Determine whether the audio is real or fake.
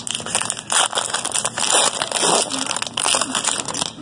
real